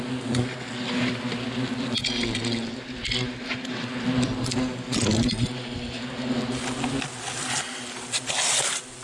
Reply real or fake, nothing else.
real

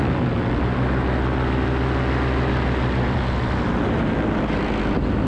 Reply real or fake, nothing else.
real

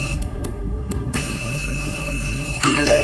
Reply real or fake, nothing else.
fake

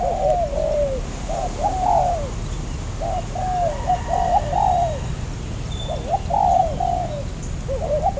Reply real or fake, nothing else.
real